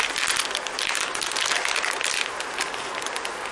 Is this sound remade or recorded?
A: recorded